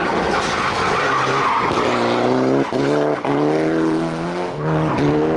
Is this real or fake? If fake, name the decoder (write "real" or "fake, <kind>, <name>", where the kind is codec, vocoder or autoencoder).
real